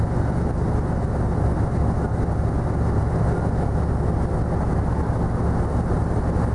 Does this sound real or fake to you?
real